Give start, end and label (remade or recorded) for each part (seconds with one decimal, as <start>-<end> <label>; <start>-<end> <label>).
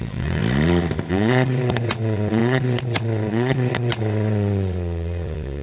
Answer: 0.0-0.4 remade; 0.4-1.1 recorded; 1.1-5.6 remade